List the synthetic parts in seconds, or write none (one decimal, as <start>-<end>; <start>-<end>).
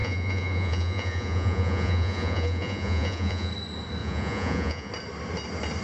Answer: 0.0-3.5; 4.0-4.9